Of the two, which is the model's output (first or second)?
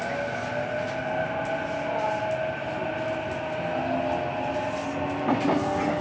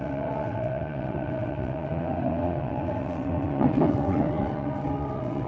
second